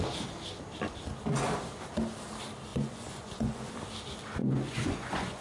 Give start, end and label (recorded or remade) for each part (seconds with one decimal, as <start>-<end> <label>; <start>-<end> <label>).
0.0-2.7 recorded; 2.7-3.7 remade; 3.7-4.4 recorded; 4.4-5.4 remade